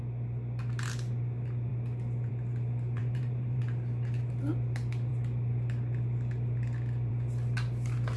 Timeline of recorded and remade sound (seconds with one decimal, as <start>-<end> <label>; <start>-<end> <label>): 0.0-3.0 recorded; 3.0-3.6 remade; 3.6-8.2 recorded